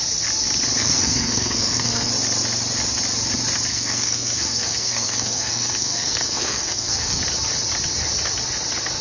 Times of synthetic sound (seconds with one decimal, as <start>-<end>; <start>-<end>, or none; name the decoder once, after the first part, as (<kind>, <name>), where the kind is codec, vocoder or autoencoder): 0.8-2.1 (codec, SNAC); 3.7-7.2